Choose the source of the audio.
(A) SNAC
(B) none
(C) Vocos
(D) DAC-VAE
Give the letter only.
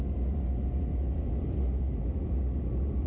B